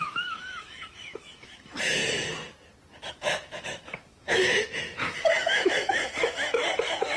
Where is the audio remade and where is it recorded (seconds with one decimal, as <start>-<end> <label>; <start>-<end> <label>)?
0.0-2.0 remade; 2.0-3.1 recorded; 3.1-7.2 remade